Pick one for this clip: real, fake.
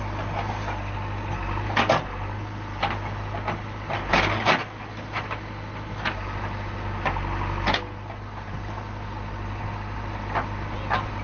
real